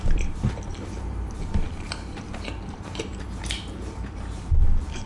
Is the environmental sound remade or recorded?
remade